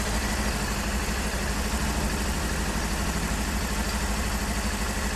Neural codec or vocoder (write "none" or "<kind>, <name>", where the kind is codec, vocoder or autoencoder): none